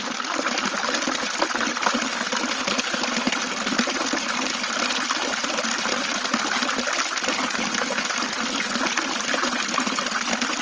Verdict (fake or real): real